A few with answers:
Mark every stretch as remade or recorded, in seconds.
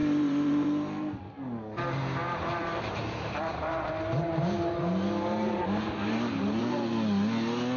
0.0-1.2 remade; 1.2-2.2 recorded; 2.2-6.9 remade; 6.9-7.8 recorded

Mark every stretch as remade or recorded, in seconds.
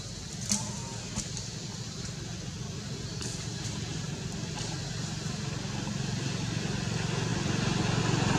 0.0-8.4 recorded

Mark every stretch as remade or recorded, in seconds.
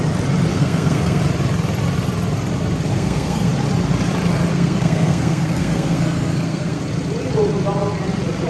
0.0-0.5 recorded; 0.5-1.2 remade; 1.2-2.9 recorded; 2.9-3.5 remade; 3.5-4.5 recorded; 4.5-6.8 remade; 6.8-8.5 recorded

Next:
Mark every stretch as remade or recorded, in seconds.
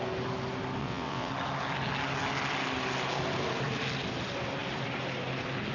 0.0-0.8 recorded; 0.8-1.3 remade; 1.3-5.7 recorded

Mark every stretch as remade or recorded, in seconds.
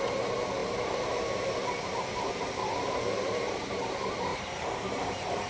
0.0-0.6 recorded; 0.6-3.9 remade; 3.9-4.3 recorded; 4.3-5.5 remade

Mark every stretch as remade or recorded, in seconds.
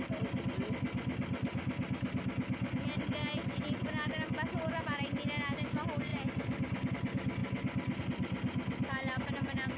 0.0-9.8 recorded